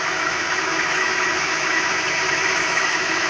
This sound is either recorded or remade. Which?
remade